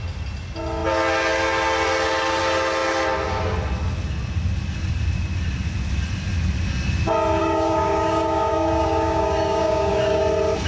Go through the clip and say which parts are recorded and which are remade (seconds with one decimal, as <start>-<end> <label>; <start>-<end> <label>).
0.0-7.4 recorded; 7.4-10.2 remade; 10.2-10.7 recorded